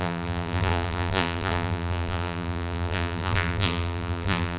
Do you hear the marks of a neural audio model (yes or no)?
yes